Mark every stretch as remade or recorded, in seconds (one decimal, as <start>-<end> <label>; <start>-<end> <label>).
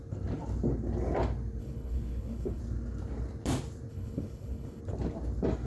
0.0-1.6 recorded; 1.6-2.6 remade; 2.6-3.9 recorded; 3.9-4.8 remade; 4.8-5.7 recorded